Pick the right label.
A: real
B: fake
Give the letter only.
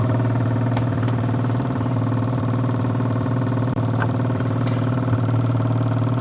B